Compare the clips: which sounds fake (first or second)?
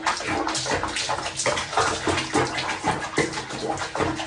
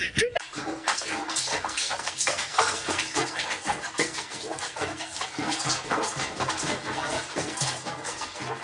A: second